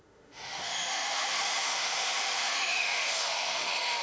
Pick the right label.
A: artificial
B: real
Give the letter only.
A